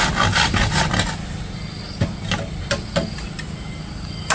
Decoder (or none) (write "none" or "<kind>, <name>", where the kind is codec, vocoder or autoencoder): none